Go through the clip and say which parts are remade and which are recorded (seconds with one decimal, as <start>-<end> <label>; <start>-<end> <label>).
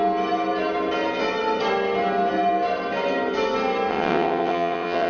0.0-3.9 recorded; 3.9-5.1 remade